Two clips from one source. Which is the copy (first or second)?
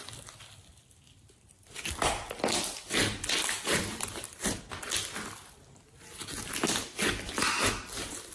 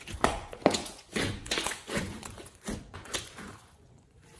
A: second